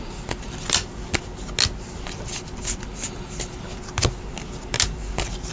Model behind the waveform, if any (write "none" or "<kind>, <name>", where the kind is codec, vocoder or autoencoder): none